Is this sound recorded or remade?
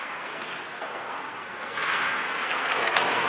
remade